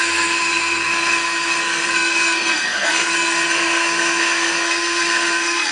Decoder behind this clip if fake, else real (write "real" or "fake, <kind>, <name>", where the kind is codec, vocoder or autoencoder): fake, codec, SNAC